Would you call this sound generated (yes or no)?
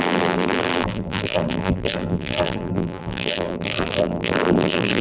yes